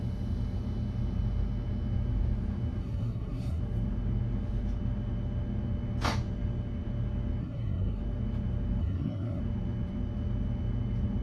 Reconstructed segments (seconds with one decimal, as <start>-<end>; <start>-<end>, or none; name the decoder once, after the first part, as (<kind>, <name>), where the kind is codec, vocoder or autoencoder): 2.8-3.6 (codec, SNAC); 7.4-8.0; 8.8-9.4